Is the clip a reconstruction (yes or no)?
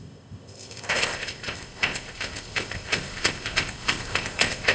yes